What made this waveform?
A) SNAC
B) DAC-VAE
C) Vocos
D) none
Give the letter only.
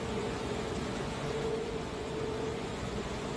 C